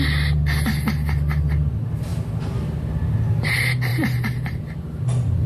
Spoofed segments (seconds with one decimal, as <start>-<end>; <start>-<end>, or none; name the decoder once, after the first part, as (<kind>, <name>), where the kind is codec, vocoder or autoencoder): 3.9-5.5 (vocoder, BigVGAN v2)